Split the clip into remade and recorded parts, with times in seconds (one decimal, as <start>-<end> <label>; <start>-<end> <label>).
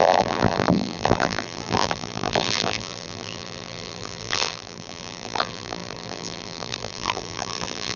0.0-8.0 remade